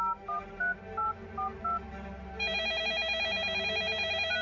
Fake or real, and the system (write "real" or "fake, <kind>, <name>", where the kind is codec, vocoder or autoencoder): real